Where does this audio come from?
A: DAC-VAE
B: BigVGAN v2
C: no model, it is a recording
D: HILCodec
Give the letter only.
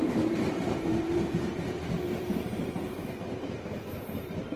B